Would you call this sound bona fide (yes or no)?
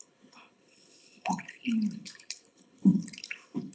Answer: no